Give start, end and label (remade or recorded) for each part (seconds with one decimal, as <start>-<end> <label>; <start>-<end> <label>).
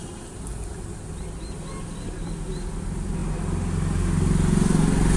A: 0.0-0.7 remade; 0.7-5.2 recorded